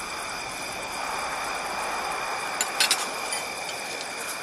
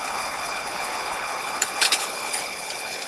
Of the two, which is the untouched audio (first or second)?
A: first